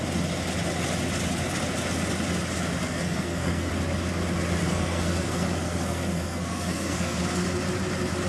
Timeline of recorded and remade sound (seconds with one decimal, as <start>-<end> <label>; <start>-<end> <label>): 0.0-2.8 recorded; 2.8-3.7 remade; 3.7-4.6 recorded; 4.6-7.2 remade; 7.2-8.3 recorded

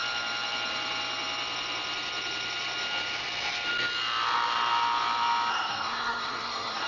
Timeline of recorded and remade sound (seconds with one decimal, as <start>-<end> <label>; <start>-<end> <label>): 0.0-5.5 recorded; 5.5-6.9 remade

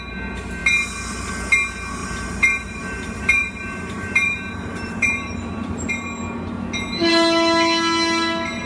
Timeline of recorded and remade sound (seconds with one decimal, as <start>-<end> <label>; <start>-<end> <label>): 0.0-2.0 recorded; 2.0-5.9 remade; 5.9-8.7 recorded

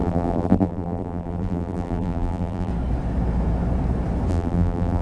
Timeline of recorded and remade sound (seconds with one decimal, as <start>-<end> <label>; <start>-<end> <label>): 0.0-2.7 remade; 2.7-4.3 recorded; 4.3-5.0 remade

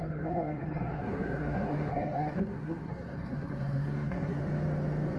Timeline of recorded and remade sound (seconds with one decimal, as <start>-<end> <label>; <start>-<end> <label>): 0.0-4.4 remade; 4.4-5.2 recorded